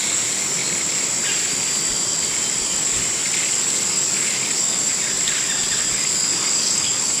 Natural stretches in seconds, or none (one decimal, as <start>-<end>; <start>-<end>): 0.6-2.6; 3.0-3.5; 4.9-5.9